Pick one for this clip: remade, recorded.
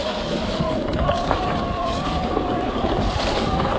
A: remade